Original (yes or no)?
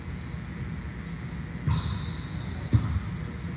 yes